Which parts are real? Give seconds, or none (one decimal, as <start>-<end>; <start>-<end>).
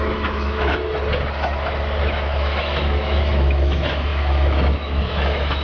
1.0-2.0